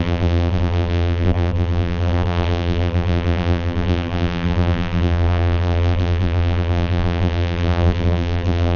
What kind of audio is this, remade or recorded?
remade